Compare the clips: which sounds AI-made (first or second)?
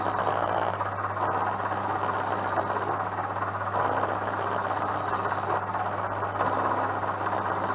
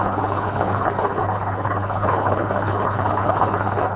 second